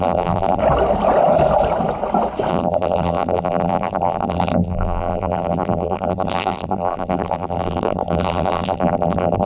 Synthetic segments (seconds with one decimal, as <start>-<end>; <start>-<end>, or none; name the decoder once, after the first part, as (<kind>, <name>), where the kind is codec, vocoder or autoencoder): 0.0-0.6 (vocoder, BigVGAN v2); 2.5-9.5